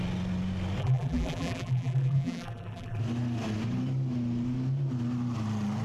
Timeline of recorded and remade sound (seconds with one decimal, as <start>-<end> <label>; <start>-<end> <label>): 0.0-0.8 recorded; 0.8-3.0 remade; 3.0-5.8 recorded